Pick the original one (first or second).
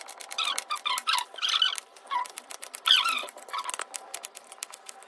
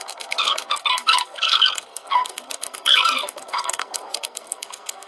first